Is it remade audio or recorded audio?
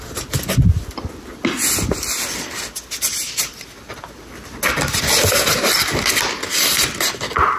recorded